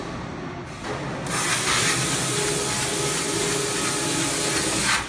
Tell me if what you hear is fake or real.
real